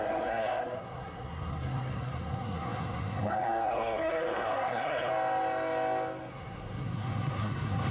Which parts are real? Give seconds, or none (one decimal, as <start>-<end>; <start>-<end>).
5.1-6.3